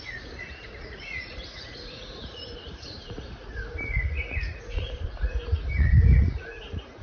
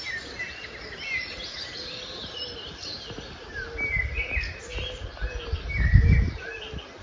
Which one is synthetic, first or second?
first